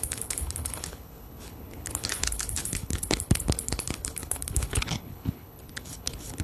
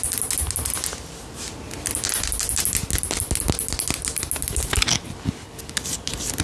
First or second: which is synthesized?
first